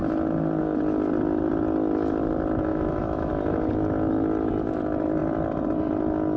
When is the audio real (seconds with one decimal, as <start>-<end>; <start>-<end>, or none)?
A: 0.0-2.7; 3.3-6.4